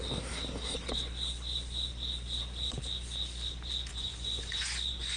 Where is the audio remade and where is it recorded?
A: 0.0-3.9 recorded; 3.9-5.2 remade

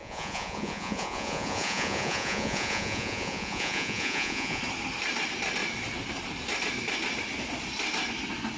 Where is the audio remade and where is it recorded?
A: 0.0-4.6 remade; 4.6-8.6 recorded

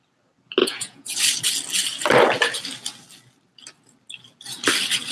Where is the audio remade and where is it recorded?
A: 0.0-0.6 recorded; 0.6-1.2 remade; 1.2-5.1 recorded

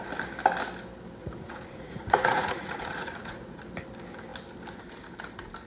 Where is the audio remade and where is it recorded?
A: 0.0-1.2 recorded; 1.2-3.6 remade; 3.6-5.7 recorded

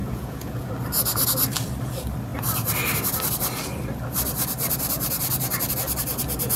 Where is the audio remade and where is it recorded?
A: 0.0-0.7 remade; 0.7-6.6 recorded

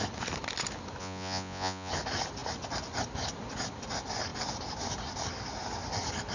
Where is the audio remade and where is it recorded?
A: 0.0-1.0 recorded; 1.0-1.9 remade; 1.9-6.3 recorded

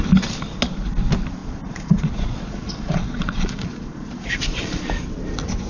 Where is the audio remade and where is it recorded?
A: 0.0-1.4 recorded; 1.4-4.8 remade; 4.8-5.7 recorded

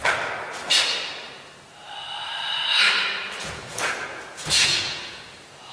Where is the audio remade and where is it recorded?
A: 0.0-3.4 recorded; 3.4-5.7 remade